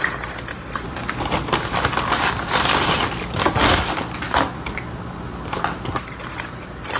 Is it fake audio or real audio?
real